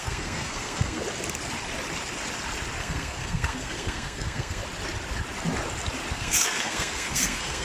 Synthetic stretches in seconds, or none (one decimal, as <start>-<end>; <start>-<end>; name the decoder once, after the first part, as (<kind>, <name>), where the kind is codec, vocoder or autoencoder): 0.0-1.0 (codec, SNAC); 2.8-4.6; 6.1-7.6